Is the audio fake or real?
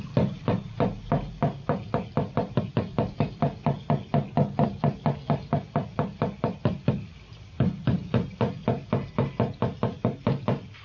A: real